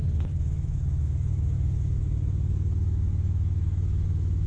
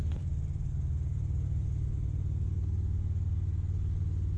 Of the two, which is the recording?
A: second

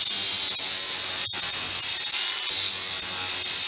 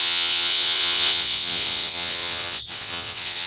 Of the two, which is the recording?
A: first